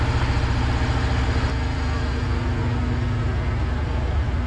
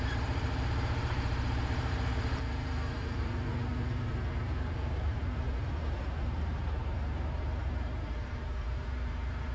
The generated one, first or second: second